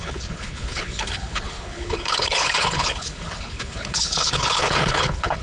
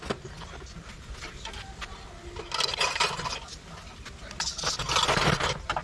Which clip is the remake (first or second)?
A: first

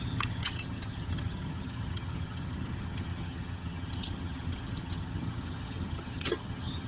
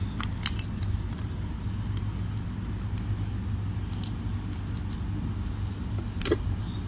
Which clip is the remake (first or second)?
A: first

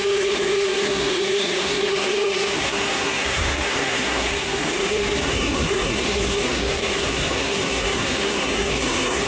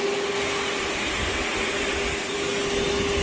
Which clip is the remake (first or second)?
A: first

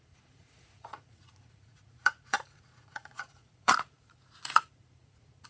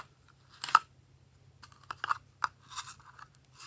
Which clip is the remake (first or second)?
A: first